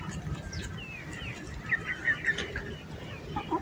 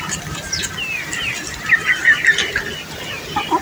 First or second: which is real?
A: first